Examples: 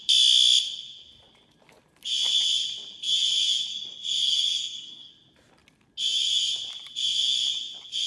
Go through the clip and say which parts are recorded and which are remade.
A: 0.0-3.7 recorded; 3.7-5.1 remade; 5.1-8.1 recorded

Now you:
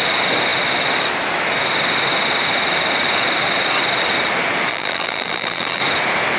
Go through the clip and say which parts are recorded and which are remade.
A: 0.0-4.7 recorded; 4.7-5.8 remade; 5.8-6.4 recorded

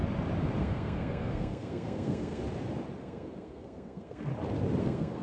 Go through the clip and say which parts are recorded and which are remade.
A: 0.0-0.6 recorded; 0.6-2.4 remade; 2.4-3.0 recorded; 3.0-4.3 remade; 4.3-4.8 recorded; 4.8-5.2 remade

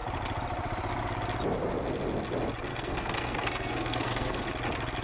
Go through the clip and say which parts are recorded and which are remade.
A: 0.0-2.7 recorded; 2.7-4.4 remade; 4.4-5.0 recorded

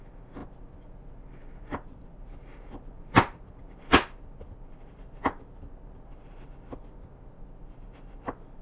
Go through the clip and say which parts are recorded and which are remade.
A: 0.0-8.6 recorded

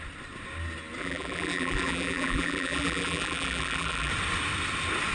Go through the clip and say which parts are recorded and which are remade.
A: 0.0-1.0 recorded; 1.0-4.1 remade; 4.1-5.1 recorded

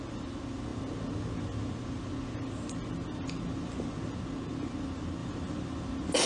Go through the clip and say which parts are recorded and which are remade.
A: 0.0-6.3 recorded

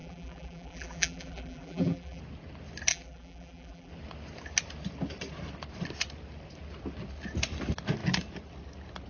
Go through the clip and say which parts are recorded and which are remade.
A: 0.0-2.2 remade; 2.2-2.9 recorded; 2.9-3.9 remade; 3.9-9.1 recorded